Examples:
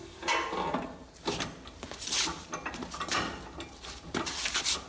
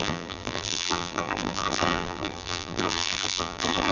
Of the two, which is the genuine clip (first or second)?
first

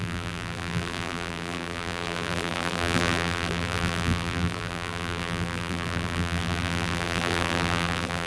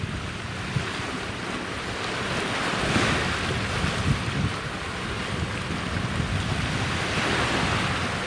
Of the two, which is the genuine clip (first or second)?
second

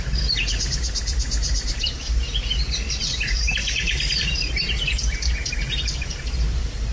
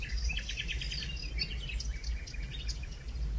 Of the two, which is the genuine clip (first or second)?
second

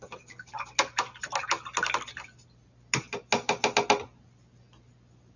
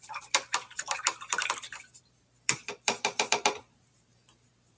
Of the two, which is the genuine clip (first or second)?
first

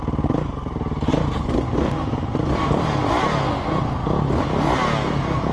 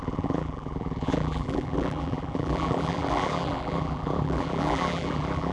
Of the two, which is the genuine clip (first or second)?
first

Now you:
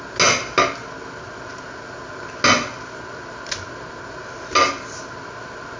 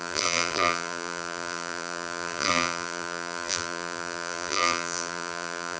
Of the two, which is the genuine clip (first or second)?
first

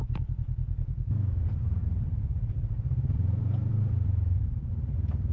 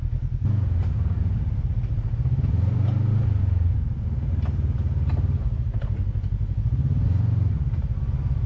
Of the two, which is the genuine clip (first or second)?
second